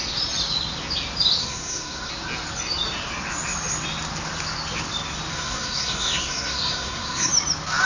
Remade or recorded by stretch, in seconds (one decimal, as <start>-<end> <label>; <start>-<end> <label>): 0.0-1.4 recorded; 1.4-2.1 remade; 2.1-5.3 recorded; 5.3-7.3 remade; 7.3-7.9 recorded